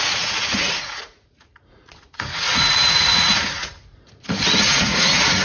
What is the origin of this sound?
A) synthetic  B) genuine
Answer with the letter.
A